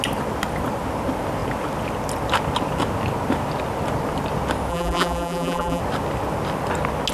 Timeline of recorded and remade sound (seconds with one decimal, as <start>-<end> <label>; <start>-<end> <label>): 0.0-4.7 recorded; 4.7-5.8 remade; 5.8-7.1 recorded